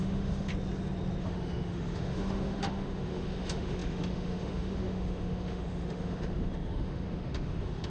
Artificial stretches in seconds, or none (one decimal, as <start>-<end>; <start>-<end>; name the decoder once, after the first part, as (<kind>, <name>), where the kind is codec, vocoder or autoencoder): 0.0-0.5 (autoencoder, DAC-VAE); 1.2-7.9